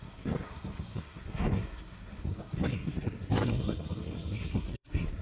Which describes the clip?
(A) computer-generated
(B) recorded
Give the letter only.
A